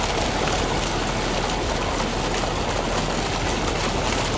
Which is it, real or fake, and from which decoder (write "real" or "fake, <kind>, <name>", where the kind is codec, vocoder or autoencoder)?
real